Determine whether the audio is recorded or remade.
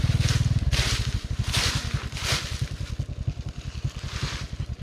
recorded